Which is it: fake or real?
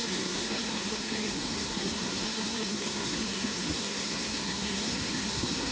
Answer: fake